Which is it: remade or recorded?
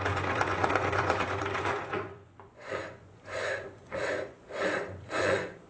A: remade